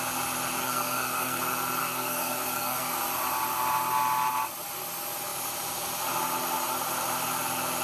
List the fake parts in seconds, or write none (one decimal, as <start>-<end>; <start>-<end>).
0.6-1.4; 1.8-3.0